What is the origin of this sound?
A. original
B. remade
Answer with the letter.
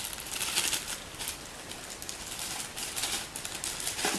B